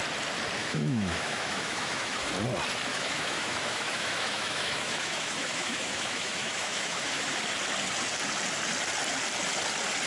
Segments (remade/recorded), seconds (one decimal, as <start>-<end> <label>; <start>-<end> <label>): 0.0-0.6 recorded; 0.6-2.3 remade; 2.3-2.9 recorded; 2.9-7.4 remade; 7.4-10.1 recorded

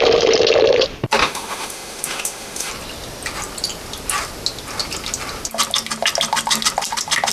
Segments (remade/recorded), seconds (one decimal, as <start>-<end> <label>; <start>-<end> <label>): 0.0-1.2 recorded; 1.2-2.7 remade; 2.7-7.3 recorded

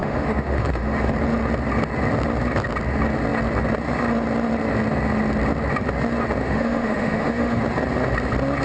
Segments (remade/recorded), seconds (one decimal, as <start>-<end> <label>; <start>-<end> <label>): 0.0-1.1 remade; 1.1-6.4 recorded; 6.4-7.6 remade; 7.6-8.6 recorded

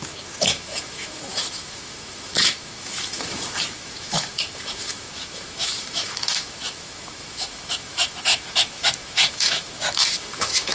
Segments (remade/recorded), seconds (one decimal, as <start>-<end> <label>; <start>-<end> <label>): 0.0-10.7 remade

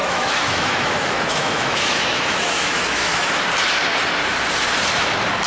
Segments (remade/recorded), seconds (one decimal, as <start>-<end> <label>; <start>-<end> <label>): 0.0-3.3 remade; 3.3-5.5 recorded